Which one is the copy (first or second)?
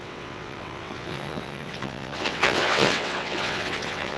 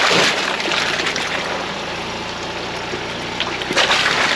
first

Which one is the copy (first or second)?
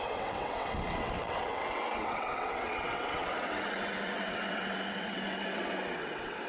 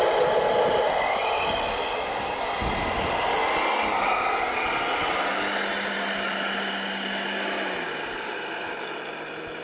first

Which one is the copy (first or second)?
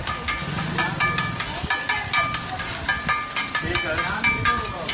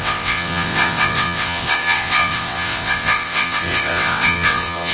second